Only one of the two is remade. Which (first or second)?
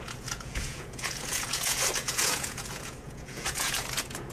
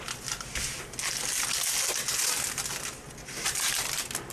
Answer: first